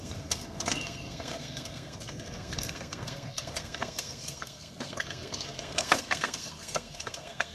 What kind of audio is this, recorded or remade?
remade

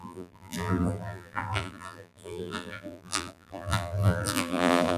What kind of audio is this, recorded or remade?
remade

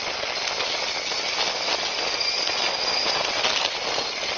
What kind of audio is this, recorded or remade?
recorded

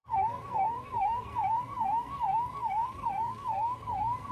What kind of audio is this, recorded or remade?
remade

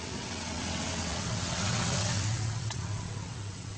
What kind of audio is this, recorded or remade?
remade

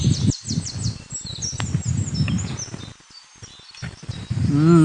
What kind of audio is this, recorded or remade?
recorded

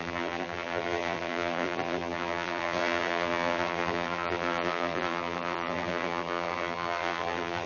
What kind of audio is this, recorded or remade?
remade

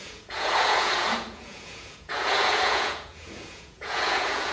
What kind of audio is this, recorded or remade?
remade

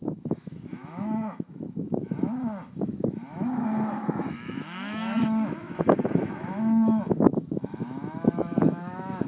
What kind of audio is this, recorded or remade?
remade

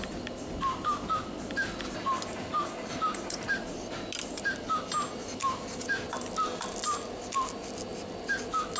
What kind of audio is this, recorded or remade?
recorded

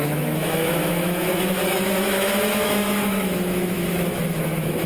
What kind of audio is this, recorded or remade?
remade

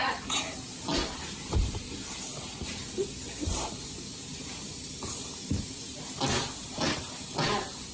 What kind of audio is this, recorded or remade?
recorded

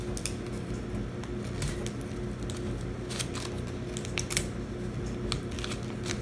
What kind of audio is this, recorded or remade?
recorded